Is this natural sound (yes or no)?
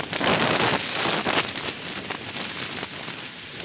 yes